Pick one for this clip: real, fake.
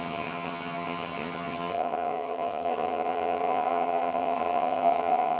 fake